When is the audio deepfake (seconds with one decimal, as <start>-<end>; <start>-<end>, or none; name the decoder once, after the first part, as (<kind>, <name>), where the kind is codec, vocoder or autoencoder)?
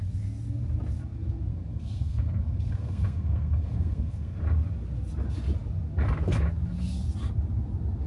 1.5-4.4 (codec, SNAC)